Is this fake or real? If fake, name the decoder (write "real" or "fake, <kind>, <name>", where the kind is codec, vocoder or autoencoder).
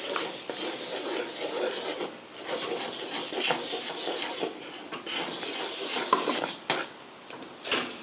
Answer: real